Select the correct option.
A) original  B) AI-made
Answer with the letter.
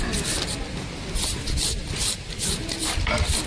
A